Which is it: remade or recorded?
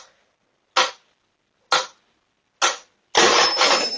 recorded